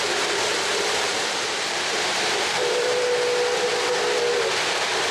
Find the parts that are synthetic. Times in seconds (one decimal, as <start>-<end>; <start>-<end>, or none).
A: 0.0-3.1